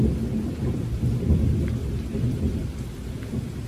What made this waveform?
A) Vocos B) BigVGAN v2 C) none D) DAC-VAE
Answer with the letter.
C